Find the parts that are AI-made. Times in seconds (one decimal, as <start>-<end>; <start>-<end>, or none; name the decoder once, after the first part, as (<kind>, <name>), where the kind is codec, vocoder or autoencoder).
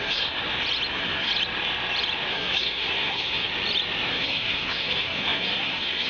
0.0-0.4 (codec, SNAC); 0.9-1.3; 2.3-3.5; 4.1-6.1